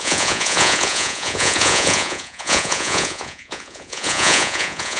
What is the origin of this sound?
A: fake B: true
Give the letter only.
A